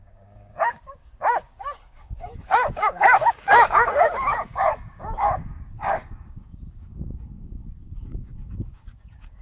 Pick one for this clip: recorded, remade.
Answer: remade